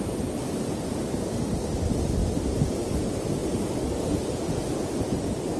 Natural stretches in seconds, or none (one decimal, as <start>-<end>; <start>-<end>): 0.0-5.6